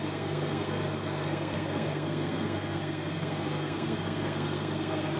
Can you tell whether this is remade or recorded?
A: remade